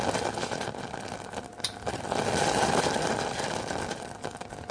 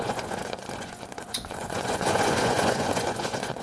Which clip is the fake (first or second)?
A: second